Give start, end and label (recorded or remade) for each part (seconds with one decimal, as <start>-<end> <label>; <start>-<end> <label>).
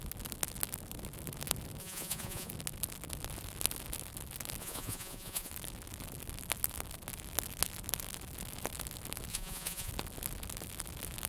0.0-1.8 recorded; 1.8-2.5 remade; 2.5-4.6 recorded; 4.6-5.5 remade; 5.5-9.3 recorded; 9.3-9.9 remade; 9.9-11.3 recorded